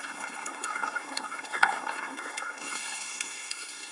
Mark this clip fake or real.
fake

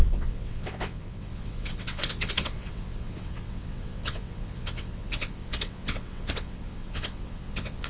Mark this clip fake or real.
fake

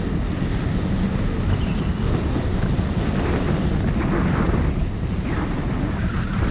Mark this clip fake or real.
real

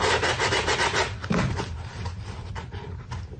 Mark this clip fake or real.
real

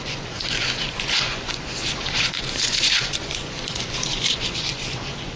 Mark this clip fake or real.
fake